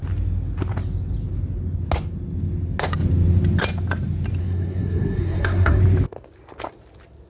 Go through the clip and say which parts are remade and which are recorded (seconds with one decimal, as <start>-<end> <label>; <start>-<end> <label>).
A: 0.0-4.4 recorded; 4.4-5.8 remade; 5.8-7.3 recorded